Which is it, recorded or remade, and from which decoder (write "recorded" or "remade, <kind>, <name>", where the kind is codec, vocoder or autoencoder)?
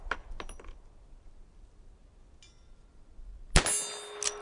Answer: recorded